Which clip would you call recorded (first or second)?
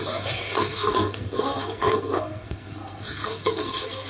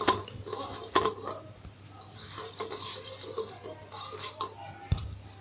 second